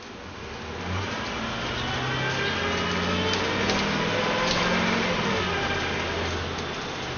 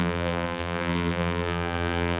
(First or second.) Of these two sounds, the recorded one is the first